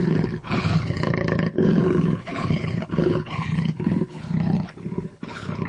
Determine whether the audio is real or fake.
fake